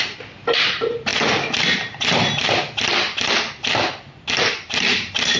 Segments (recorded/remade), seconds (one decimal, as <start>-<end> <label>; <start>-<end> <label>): 0.0-5.4 recorded